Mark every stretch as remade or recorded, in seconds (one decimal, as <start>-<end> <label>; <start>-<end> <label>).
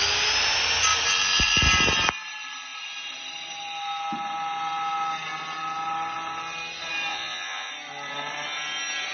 0.0-7.1 recorded; 7.1-7.7 remade; 7.7-9.1 recorded